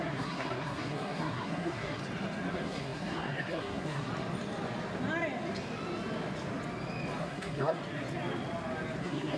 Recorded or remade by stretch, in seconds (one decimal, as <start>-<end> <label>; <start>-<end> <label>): 0.0-2.0 remade; 2.0-2.5 recorded; 2.5-4.1 remade; 4.1-7.2 recorded; 7.2-7.8 remade; 7.8-9.0 recorded; 9.0-9.4 remade